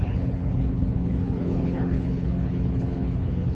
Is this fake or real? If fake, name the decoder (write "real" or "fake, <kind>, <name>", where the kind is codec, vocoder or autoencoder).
fake, codec, HILCodec